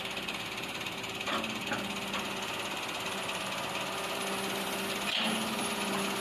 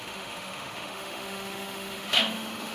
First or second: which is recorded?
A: first